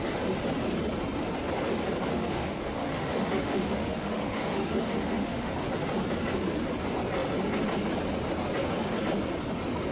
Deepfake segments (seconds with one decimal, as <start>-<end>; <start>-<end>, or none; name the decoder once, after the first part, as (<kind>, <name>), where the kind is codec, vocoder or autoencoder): 2.1-5.5 (autoencoder, DAC-VAE)